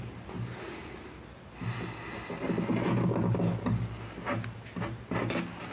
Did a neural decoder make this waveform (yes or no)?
no